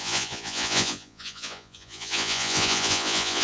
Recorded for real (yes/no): no